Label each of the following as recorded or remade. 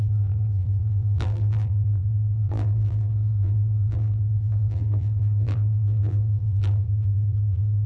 remade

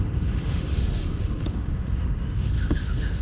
remade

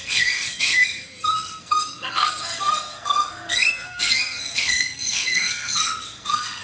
remade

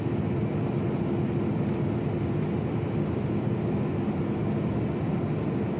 recorded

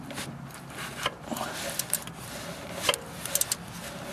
recorded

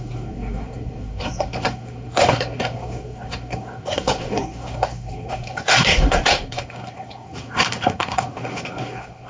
remade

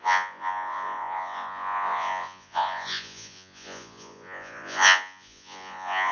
remade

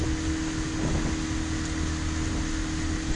recorded